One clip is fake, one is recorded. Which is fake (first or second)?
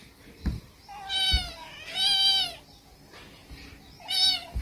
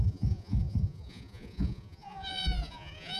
second